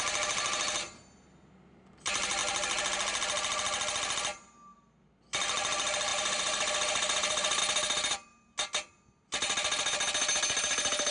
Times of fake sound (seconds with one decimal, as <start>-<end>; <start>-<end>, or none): 6.1-7.6